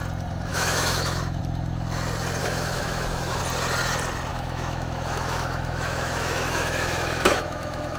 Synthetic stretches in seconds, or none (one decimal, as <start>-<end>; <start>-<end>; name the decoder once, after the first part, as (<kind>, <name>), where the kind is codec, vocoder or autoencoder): 0.5-1.4 (autoencoder, DAC-VAE); 2.4-3.4; 4.3-8.0